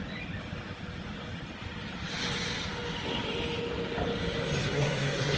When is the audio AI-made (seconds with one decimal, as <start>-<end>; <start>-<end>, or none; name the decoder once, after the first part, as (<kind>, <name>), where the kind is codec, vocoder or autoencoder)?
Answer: 4.6-5.4 (codec, SNAC)